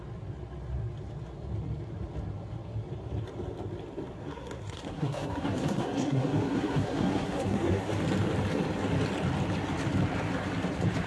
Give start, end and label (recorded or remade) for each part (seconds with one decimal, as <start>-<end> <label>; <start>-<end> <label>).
0.0-4.2 recorded; 4.2-8.0 remade; 8.0-11.1 recorded